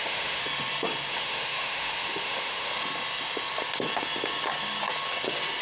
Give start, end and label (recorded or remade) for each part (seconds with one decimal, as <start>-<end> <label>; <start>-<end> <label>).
0.0-0.4 remade; 0.4-1.1 recorded; 1.1-2.7 remade; 2.7-5.6 recorded